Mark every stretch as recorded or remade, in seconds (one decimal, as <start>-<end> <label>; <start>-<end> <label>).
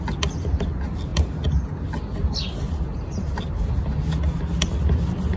0.0-5.4 recorded